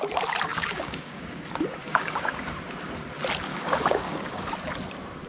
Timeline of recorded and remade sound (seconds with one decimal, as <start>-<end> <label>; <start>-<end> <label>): 0.0-0.5 recorded; 0.5-1.4 remade; 1.4-1.8 recorded; 1.8-2.3 remade; 2.3-3.5 recorded; 3.5-4.4 remade; 4.4-5.3 recorded